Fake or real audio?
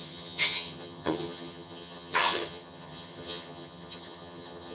fake